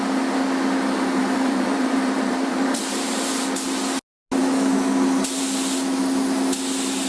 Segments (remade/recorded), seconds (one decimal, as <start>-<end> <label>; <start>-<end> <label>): 0.0-1.2 recorded; 1.2-2.8 remade; 2.8-7.1 recorded